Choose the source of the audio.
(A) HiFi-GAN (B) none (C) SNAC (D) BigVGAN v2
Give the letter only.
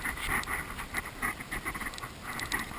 B